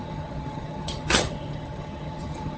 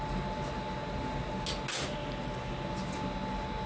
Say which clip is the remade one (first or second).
first